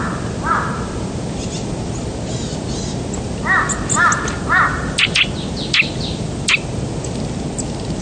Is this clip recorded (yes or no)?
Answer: yes